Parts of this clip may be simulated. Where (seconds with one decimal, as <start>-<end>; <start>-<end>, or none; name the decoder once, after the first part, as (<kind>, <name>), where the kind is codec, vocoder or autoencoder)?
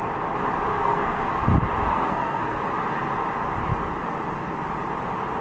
0.7-1.2 (codec, SNAC); 1.9-2.6